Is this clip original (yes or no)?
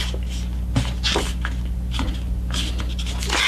yes